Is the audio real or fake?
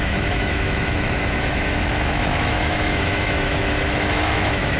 fake